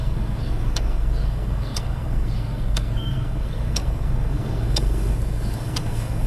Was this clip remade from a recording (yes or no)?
yes